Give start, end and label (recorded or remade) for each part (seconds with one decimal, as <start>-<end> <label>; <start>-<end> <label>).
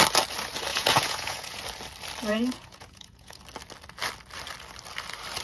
0.0-0.7 recorded; 0.7-1.6 remade; 1.6-2.3 recorded; 2.3-3.4 remade; 3.4-5.4 recorded